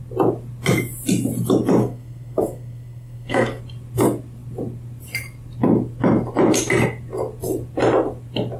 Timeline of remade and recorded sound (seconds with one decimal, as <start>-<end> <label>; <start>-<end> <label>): 0.0-1.8 recorded; 1.8-3.6 remade; 3.6-8.6 recorded